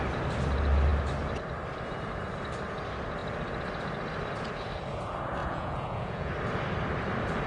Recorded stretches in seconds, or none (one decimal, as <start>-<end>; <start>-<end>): 0.0-5.4; 6.3-7.5